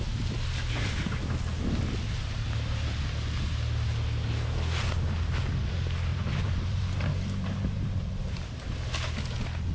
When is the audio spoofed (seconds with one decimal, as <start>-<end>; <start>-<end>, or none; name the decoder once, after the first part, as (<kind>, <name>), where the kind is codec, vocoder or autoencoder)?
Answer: 6.1-8.6 (vocoder, BigVGAN v2)